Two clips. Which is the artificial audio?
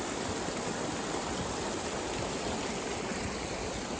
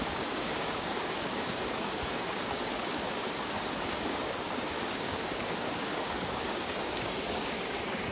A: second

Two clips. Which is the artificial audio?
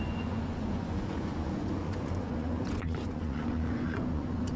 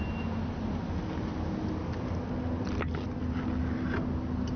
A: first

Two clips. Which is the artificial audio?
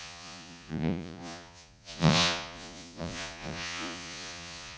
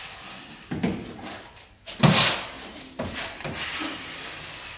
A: first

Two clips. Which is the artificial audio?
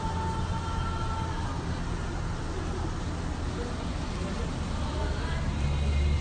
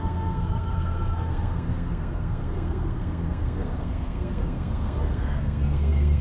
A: second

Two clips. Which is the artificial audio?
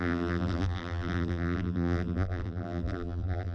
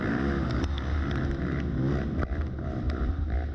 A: first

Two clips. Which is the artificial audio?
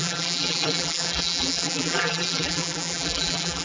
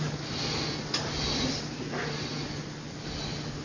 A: first